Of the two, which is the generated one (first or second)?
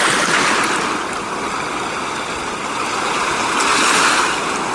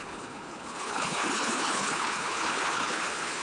second